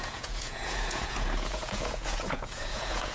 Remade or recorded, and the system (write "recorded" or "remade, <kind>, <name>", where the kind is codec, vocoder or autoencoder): remade, vocoder, Vocos